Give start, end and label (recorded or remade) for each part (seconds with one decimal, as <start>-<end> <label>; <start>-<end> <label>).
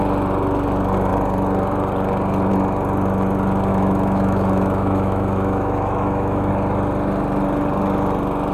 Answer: 0.0-3.7 recorded; 3.7-6.5 remade; 6.5-8.5 recorded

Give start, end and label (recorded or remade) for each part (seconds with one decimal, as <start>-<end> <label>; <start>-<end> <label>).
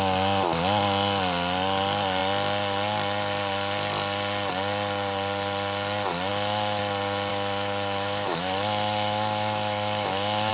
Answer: 0.0-6.3 recorded; 6.3-6.8 remade; 6.8-7.3 recorded; 7.3-10.5 remade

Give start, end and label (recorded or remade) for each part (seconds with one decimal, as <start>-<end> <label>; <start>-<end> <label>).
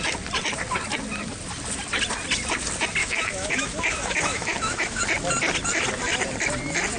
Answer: 0.0-3.0 recorded; 3.0-5.0 remade; 5.0-7.0 recorded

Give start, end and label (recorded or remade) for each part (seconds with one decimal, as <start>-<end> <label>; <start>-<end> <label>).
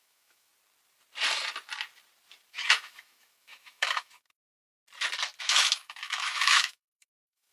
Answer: 0.0-0.5 remade; 0.5-2.5 recorded; 2.5-4.7 remade; 4.7-5.4 recorded; 5.4-7.5 remade